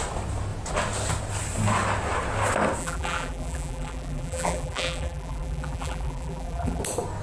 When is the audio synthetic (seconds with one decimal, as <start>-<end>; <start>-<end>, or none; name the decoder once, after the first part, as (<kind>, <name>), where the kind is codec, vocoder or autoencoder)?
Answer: 2.8-6.8 (vocoder, BigVGAN v2)